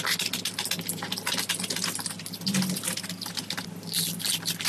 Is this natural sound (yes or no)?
yes